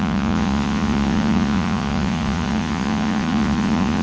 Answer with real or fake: fake